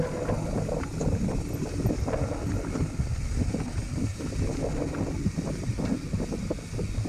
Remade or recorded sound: recorded